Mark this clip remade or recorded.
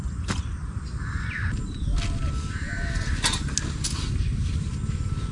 recorded